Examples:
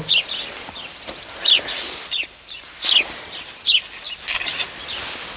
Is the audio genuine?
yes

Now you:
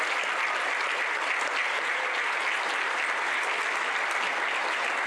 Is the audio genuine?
yes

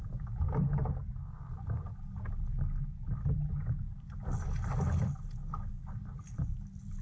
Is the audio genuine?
yes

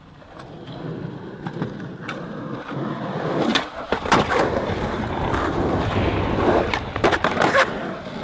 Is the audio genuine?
no